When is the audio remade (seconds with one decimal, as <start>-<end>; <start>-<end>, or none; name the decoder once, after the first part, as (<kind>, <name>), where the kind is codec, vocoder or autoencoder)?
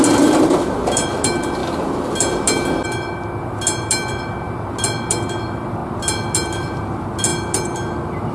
none